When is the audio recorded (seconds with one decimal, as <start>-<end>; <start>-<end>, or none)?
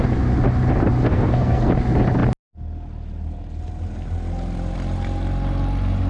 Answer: 0.0-1.1; 1.7-6.1